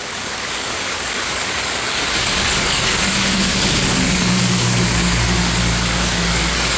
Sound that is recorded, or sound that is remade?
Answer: remade